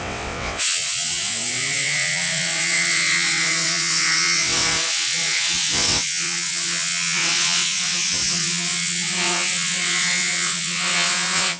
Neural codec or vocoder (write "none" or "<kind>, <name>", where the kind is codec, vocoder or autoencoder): vocoder, WaveNeXt